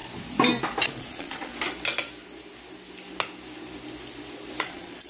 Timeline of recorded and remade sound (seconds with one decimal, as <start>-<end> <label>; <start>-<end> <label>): 0.0-1.0 recorded; 1.0-1.5 remade; 1.5-4.6 recorded; 4.6-5.1 remade